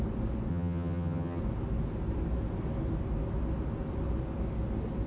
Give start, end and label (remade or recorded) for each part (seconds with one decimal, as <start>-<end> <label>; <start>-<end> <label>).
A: 0.0-0.5 recorded; 0.5-1.4 remade; 1.4-5.1 recorded